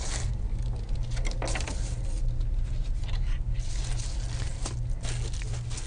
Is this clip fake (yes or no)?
no